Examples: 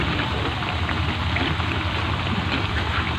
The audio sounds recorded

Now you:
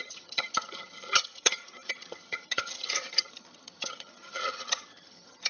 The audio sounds remade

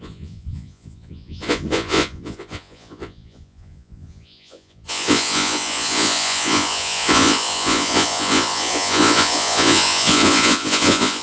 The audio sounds remade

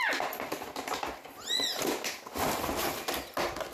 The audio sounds recorded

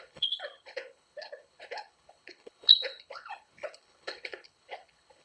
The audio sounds remade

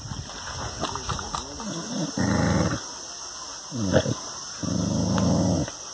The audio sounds recorded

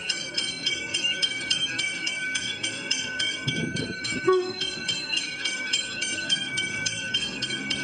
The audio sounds remade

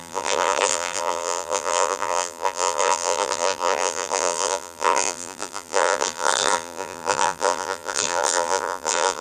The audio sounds remade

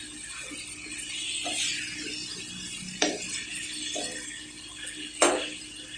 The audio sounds recorded